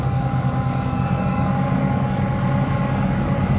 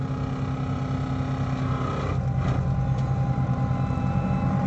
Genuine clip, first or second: second